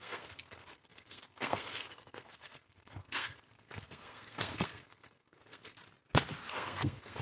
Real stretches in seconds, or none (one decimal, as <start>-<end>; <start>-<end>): 5.8-6.5